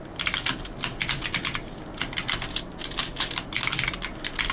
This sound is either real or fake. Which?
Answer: real